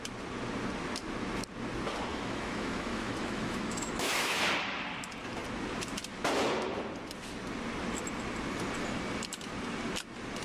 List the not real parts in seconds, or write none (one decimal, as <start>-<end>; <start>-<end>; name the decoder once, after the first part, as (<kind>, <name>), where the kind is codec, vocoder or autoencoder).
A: 2.1-4.4 (autoencoder, DAC-VAE)